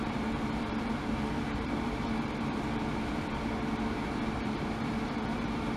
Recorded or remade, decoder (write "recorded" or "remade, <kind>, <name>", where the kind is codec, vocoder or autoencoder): remade, vocoder, BigVGAN v2